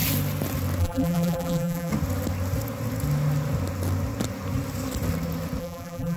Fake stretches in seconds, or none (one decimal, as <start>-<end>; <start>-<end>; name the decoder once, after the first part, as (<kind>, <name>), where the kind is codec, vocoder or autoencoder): 0.8-1.9 (vocoder, BigVGAN v2); 5.6-6.2